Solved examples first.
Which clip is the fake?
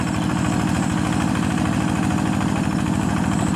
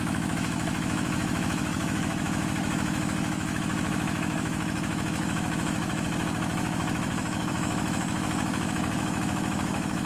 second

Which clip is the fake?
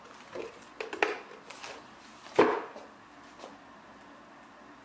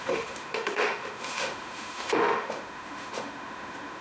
second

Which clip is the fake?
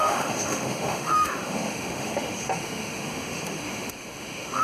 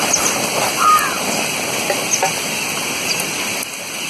first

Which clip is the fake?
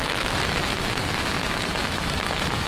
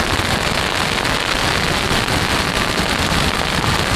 first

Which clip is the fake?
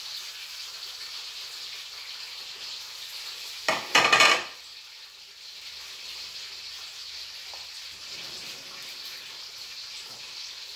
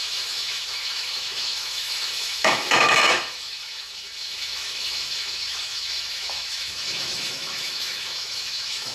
second